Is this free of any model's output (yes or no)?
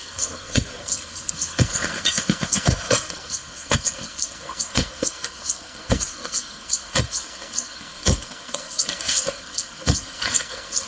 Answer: no